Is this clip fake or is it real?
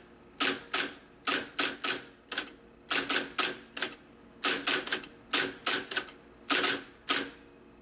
real